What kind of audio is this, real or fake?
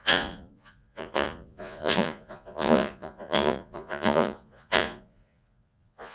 fake